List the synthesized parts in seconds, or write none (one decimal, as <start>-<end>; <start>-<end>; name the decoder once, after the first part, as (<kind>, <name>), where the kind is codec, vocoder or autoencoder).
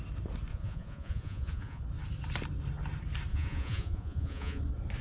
0.5-1.8 (vocoder, Vocos); 3.3-4.6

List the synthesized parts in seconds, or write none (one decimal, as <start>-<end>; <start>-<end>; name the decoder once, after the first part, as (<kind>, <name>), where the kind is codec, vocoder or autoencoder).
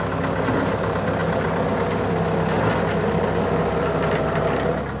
none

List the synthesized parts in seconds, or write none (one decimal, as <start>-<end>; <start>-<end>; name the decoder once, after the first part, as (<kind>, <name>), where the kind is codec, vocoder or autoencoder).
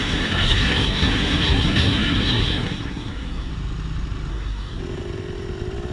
0.0-3.5 (codec, SNAC); 4.3-4.8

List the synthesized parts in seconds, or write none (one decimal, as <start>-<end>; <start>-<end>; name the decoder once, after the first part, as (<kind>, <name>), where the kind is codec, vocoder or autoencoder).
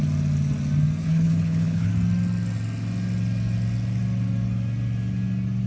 1.0-1.9 (codec, HILCodec)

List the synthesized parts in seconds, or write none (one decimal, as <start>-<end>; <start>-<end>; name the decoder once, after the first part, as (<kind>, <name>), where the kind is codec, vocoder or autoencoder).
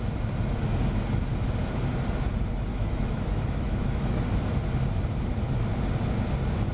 2.7-4.2 (autoencoder, DAC-VAE)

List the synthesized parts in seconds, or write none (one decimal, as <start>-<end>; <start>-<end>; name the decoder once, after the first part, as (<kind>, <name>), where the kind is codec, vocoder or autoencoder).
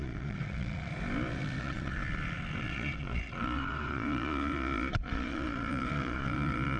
0.0-0.9 (vocoder, Vocos); 1.6-2.0; 2.6-6.8